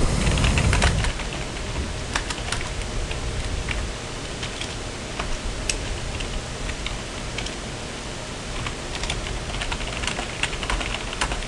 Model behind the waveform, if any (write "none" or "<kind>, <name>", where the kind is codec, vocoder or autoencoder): none